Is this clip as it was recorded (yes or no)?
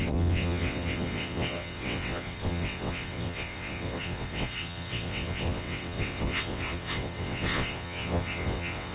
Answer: no